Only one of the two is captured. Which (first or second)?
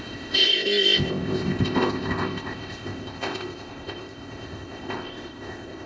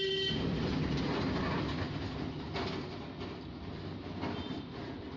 second